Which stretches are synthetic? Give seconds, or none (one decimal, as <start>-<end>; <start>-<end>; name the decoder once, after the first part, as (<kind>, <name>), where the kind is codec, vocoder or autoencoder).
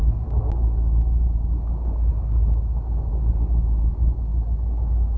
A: none